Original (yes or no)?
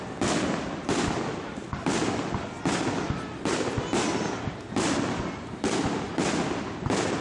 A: yes